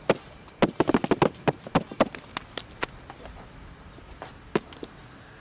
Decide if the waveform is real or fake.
real